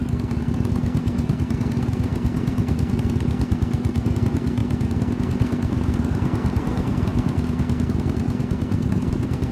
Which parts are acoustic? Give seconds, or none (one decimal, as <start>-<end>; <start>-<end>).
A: none